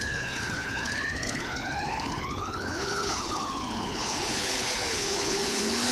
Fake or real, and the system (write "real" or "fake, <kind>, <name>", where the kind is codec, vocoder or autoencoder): fake, codec, HILCodec